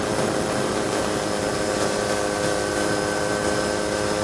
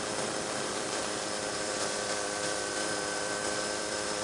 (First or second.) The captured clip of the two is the first